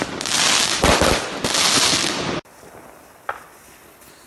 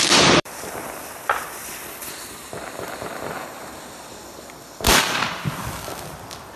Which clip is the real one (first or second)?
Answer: first